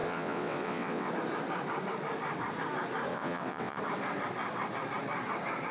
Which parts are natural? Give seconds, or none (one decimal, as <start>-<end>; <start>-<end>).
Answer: 1.1-3.1; 3.8-5.7